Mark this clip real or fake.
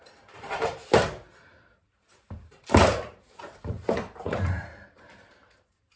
fake